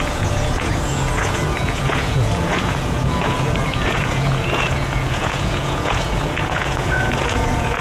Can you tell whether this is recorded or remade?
remade